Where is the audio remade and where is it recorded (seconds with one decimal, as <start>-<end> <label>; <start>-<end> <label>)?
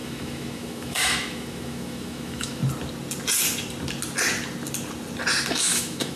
0.0-2.6 remade; 2.6-5.5 recorded; 5.5-6.2 remade